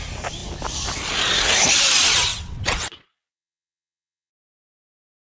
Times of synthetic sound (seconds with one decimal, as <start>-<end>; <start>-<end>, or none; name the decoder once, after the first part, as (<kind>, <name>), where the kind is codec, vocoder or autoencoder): 2.3-4.3 (vocoder, WaveNeXt)